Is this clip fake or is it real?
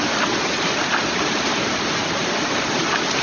real